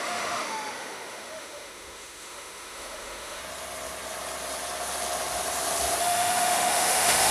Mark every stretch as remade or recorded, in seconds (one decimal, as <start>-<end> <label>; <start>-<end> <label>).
0.0-3.4 remade; 3.4-6.0 recorded; 6.0-7.3 remade